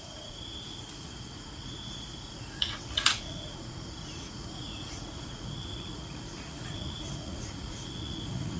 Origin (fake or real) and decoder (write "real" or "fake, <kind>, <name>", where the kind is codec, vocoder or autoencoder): fake, vocoder, Vocos